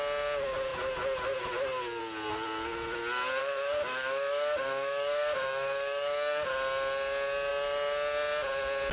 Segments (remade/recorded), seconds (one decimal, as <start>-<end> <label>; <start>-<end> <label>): 0.0-3.4 recorded; 3.4-6.5 remade; 6.5-8.9 recorded